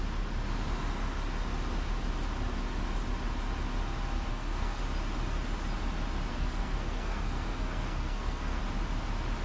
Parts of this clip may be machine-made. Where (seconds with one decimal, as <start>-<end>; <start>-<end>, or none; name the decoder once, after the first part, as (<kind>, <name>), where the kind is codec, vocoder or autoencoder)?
4.3-4.8 (codec, SNAC); 6.3-8.6